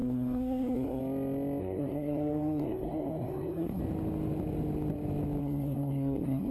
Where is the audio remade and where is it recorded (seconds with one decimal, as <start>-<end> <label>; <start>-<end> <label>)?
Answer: 0.0-1.0 remade; 1.0-1.6 recorded; 1.6-3.8 remade; 3.8-5.4 recorded; 5.4-6.5 remade